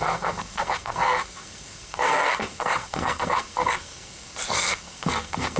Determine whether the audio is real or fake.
fake